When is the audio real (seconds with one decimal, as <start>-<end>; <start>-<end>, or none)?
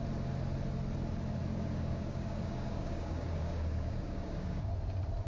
0.0-1.5; 4.7-5.3